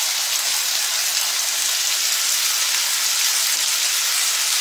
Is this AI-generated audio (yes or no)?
no